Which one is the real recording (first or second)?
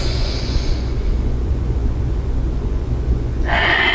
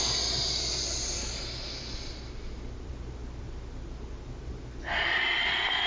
second